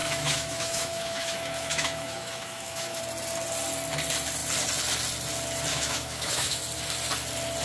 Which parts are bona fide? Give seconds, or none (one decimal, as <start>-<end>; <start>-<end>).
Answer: 3.0-5.7; 6.6-7.6